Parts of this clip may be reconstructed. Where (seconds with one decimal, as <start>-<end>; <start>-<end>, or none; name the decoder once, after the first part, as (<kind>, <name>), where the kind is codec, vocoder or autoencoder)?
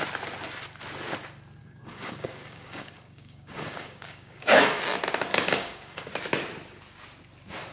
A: 1.6-4.8 (codec, DAC); 5.3-6.1